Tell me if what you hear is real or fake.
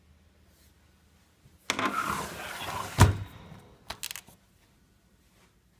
real